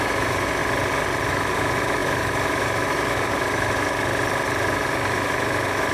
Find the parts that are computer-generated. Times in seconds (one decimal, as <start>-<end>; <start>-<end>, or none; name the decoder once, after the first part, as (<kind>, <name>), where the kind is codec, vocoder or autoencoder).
0.0-0.6 (autoencoder, DAC-VAE); 1.3-4.1; 4.6-5.9

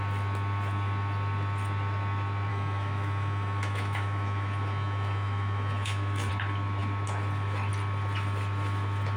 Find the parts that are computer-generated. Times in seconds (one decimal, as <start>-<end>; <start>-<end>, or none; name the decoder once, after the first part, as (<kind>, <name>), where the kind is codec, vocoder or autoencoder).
2.5-6.3 (autoencoder, DAC-VAE)

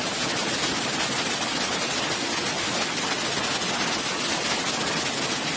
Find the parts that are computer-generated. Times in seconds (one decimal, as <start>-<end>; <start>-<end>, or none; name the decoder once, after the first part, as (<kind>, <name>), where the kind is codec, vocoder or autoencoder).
none

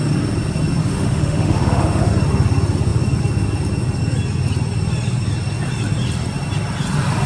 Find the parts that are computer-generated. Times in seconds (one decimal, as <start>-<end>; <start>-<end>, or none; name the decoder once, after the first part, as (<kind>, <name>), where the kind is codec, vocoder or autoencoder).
0.8-2.1 (autoencoder, DAC-VAE)

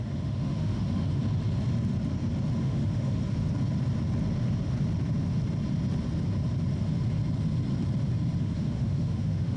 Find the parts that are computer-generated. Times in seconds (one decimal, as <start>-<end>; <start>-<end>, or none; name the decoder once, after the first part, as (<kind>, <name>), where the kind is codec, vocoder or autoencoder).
0.0-1.2 (autoencoder, DAC-VAE); 2.6-3.2; 8.4-9.6

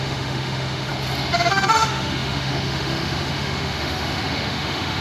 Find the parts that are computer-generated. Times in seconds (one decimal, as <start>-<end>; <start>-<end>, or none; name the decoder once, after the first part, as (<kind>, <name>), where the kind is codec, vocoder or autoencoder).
0.0-0.9 (autoencoder, DAC-VAE); 1.5-5.0

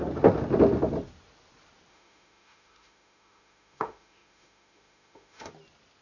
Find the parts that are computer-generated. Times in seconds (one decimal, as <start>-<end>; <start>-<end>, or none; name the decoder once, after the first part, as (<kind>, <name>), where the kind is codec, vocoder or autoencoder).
1.9-5.5 (autoencoder, DAC-VAE)